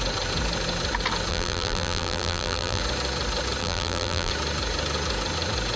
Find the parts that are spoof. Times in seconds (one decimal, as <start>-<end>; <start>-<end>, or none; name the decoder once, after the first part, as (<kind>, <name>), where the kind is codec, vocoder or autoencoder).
1.3-2.8 (vocoder, BigVGAN v2); 3.6-4.3